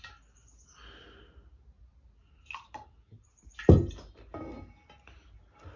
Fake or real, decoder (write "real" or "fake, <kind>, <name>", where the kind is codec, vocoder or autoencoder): real